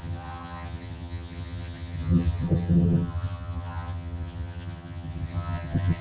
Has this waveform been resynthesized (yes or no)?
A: yes